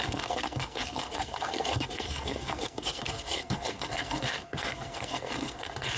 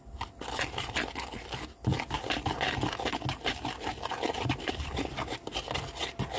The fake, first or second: first